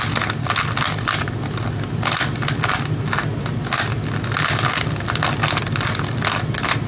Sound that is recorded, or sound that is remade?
recorded